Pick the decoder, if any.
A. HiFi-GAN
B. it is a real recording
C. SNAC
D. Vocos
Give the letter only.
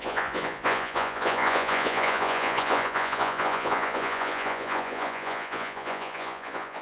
D